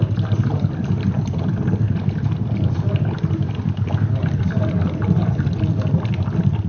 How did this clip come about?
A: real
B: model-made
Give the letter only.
A